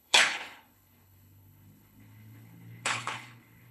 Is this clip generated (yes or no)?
yes